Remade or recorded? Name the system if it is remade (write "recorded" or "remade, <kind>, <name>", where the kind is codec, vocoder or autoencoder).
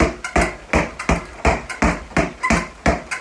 recorded